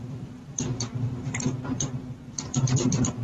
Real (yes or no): no